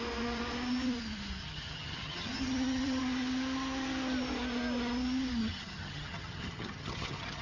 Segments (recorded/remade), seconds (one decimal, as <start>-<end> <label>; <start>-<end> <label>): 0.0-1.4 recorded; 1.4-3.0 remade; 3.0-5.4 recorded; 5.4-7.4 remade